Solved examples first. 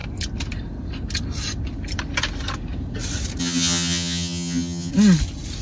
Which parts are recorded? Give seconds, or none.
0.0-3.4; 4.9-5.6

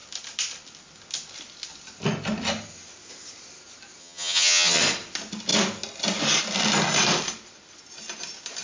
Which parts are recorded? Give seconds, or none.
0.0-4.0; 4.8-8.6

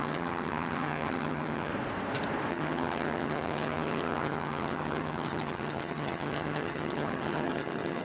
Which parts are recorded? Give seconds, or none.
1.7-2.5